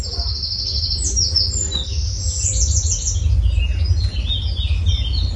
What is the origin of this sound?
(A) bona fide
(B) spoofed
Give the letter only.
A